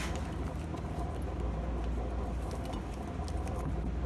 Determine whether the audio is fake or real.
real